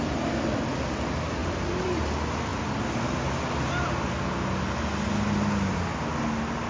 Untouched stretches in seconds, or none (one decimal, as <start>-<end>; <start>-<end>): 0.0-6.7